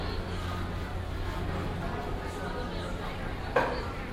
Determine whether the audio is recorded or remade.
recorded